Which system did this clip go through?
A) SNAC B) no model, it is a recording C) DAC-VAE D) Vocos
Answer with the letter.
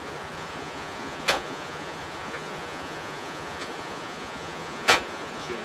D